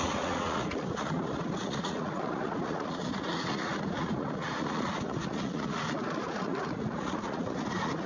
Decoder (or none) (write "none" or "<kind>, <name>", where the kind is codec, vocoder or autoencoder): vocoder, Vocos